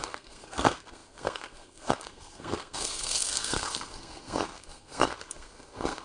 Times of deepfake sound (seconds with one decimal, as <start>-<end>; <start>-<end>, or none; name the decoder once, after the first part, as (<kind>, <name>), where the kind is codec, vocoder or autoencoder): 0.0-6.0 (codec, SNAC)